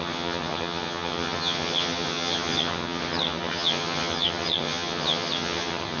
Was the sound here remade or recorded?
remade